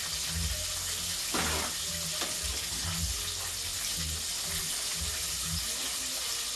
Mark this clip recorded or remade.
recorded